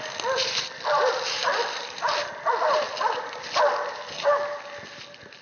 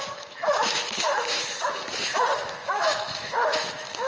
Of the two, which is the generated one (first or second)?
second